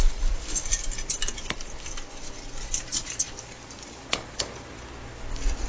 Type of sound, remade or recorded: recorded